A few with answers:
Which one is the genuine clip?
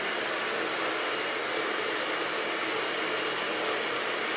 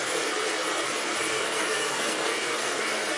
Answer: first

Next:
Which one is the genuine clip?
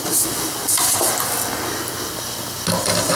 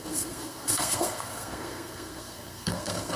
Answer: first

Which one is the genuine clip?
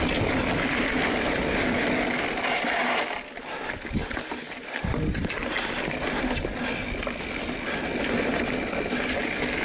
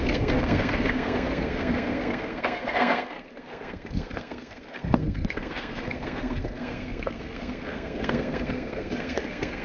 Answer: first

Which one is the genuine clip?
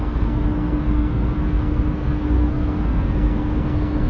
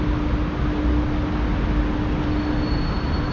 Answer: second